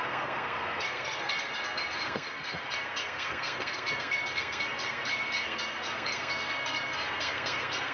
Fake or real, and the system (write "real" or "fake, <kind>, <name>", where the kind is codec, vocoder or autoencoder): fake, codec, SNAC